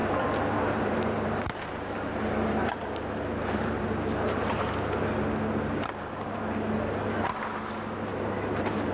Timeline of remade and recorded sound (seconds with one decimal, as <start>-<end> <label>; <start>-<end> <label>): 0.0-4.6 remade; 4.6-8.1 recorded; 8.1-8.9 remade